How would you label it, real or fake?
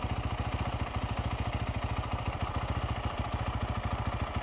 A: real